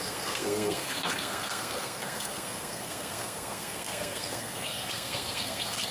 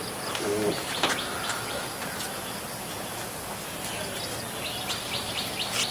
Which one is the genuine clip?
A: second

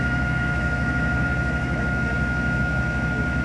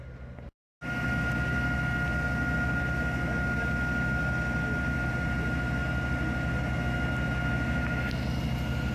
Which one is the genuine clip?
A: second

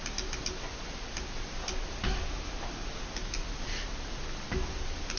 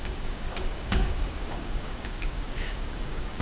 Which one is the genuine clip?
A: first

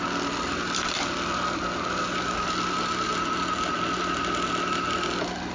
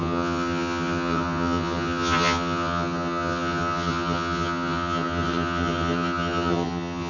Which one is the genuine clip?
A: first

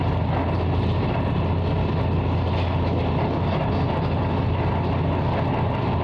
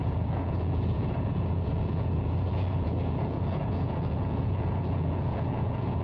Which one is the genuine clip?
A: first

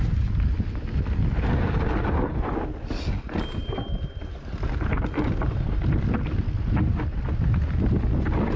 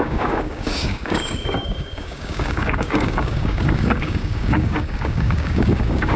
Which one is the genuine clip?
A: first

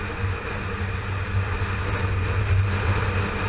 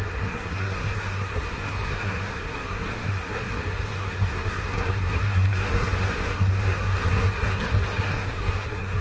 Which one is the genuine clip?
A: first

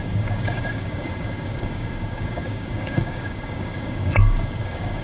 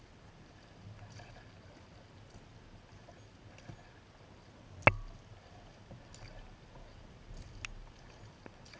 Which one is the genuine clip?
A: second